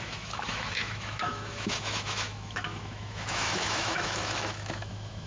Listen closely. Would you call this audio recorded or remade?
remade